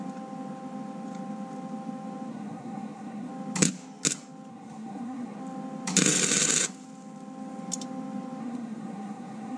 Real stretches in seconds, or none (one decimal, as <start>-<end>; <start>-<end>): 0.0-2.3; 3.3-4.5; 5.4-8.4